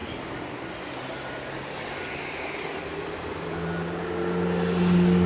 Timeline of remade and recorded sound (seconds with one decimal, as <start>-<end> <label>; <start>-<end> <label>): 0.0-5.3 recorded